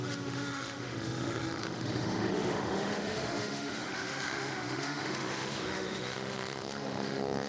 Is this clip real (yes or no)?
no